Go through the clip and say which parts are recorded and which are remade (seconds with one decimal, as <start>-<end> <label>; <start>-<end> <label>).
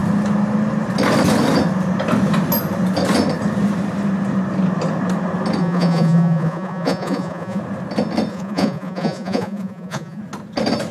0.0-5.6 recorded; 5.6-7.6 remade; 7.6-8.3 recorded; 8.3-10.2 remade; 10.2-10.9 recorded